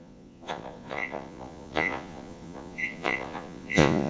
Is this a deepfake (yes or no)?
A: yes